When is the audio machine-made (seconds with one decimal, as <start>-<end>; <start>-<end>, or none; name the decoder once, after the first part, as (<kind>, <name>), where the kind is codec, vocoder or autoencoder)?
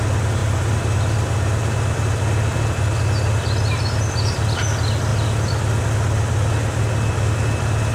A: none